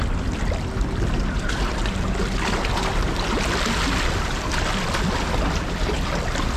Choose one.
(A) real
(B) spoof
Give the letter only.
A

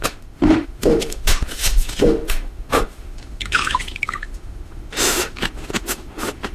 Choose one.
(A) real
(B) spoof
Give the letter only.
B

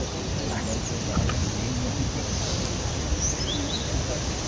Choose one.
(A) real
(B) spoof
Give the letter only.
A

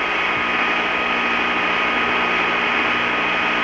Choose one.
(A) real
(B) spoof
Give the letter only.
A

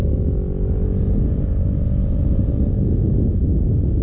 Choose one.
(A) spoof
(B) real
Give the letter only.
B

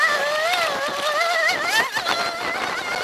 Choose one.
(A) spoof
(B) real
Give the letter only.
B